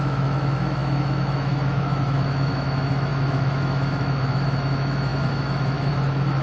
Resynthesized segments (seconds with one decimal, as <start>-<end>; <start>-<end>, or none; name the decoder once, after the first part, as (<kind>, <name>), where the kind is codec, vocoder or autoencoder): 0.0-6.4 (autoencoder, DAC-VAE)